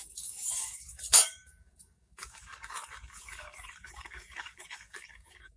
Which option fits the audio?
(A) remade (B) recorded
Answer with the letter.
A